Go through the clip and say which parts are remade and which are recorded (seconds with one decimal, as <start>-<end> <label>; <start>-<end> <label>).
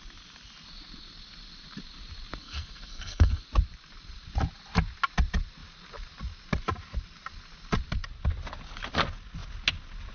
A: 0.0-2.4 recorded; 2.4-3.4 remade; 3.4-10.1 recorded